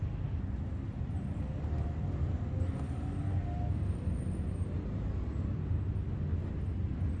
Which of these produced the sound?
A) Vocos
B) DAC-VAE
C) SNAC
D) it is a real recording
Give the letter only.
D